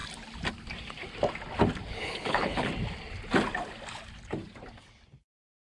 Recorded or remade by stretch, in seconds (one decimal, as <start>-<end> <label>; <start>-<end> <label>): 0.0-2.0 recorded; 2.0-2.7 remade; 2.7-5.6 recorded